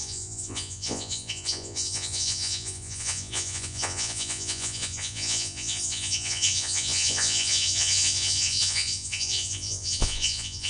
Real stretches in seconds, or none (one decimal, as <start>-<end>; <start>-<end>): none